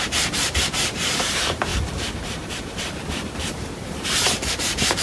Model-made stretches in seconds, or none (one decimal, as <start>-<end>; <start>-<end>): 0.0-5.0